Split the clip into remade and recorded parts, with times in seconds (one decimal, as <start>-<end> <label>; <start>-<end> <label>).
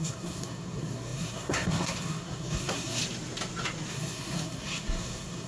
0.0-3.0 remade; 3.0-3.9 recorded; 3.9-5.5 remade